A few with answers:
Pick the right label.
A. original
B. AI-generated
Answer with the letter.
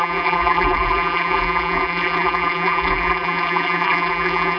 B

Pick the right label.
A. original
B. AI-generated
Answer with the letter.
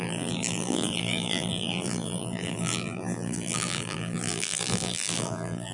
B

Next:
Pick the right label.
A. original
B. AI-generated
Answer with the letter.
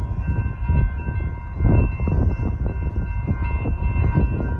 A